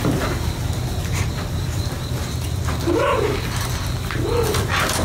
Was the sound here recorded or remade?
recorded